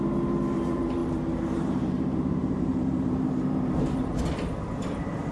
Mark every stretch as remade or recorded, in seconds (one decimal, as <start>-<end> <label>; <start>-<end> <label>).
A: 0.0-5.3 remade